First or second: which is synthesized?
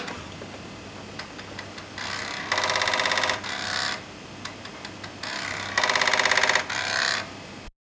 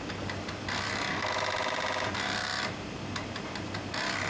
second